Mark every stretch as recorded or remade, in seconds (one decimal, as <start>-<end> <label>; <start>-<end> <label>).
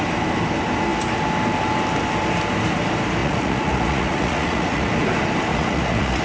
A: 0.0-3.2 recorded; 3.2-4.9 remade; 4.9-5.5 recorded; 5.5-6.2 remade